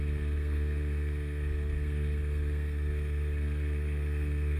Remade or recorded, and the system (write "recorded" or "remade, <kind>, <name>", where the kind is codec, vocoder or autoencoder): remade, codec, SNAC